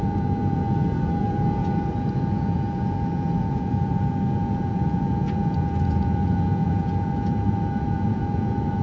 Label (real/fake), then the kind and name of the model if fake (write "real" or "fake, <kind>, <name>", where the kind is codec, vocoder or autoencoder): fake, vocoder, Vocos